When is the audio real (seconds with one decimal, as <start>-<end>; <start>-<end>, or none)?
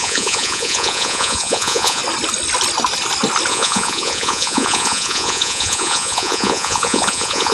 2.0-3.5